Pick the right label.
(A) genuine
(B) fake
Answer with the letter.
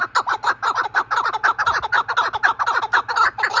A